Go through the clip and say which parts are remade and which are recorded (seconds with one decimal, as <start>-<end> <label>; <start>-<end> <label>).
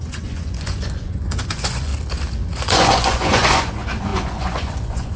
0.0-1.9 remade; 1.9-2.6 recorded; 2.6-5.2 remade